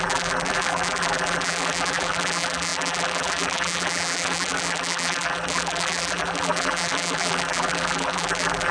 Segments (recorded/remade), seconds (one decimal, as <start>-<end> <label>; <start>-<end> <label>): 0.0-8.7 remade